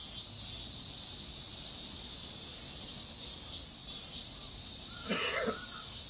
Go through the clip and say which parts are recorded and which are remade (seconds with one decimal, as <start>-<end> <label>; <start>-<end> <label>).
0.0-3.8 recorded; 3.8-5.3 remade; 5.3-6.1 recorded